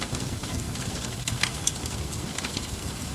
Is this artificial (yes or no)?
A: yes